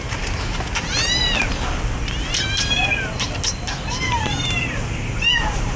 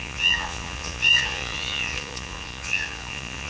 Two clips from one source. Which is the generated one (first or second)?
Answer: second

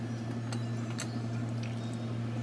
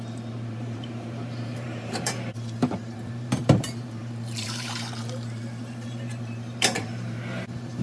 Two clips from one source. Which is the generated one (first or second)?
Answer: second